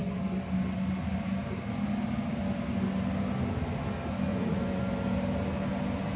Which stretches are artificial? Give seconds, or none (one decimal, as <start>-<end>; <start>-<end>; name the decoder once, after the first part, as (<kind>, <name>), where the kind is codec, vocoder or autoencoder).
4.3-4.9 (vocoder, Vocos)